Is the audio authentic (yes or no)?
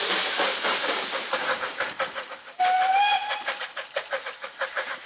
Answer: no